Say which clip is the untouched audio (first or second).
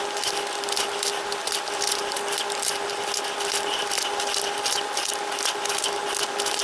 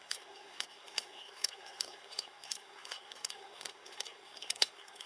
first